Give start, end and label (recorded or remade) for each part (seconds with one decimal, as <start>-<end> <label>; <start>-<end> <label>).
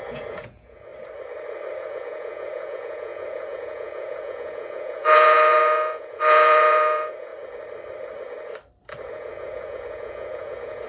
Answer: 0.0-0.9 remade; 0.9-1.8 recorded; 1.8-7.3 remade; 7.3-9.1 recorded; 9.1-10.9 remade